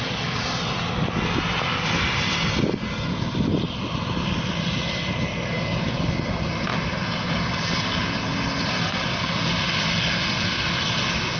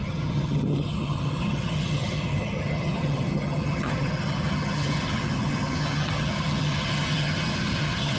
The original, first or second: first